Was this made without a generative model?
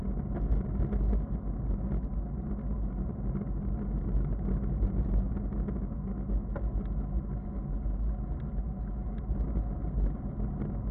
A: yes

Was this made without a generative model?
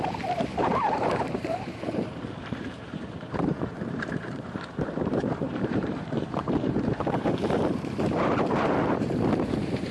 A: no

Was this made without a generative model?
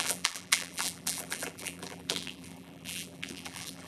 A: no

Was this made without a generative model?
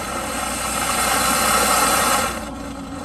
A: yes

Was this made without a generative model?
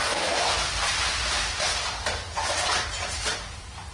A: no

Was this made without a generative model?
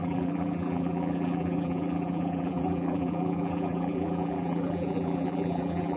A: no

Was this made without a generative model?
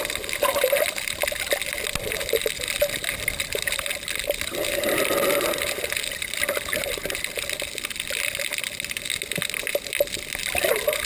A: yes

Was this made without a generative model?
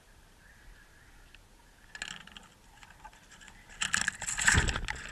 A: yes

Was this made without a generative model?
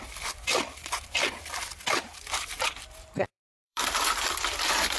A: no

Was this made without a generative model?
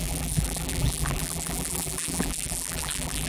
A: no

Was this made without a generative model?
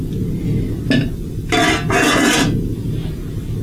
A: yes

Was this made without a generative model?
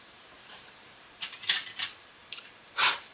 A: no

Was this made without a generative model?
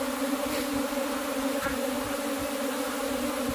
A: yes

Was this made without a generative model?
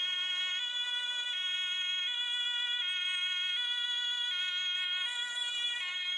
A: no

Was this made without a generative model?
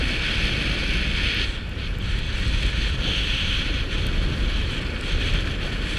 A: yes